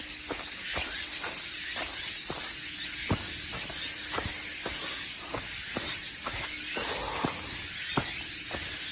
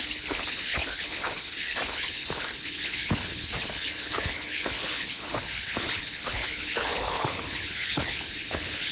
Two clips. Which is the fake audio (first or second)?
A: second